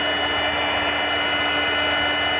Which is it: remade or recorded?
recorded